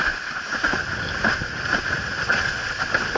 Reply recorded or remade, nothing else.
recorded